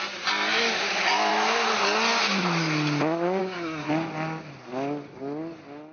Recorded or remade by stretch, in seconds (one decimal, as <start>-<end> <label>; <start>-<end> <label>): 0.0-3.4 recorded; 3.4-3.9 remade; 3.9-5.9 recorded